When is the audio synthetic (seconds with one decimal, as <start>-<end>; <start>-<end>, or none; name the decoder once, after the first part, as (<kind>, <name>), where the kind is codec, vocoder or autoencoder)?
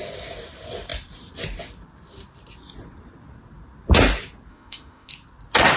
4.5-5.1 (autoencoder, DAC-VAE)